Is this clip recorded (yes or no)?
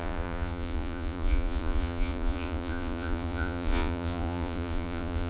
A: no